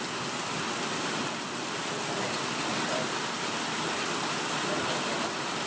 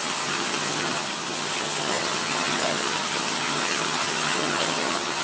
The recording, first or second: first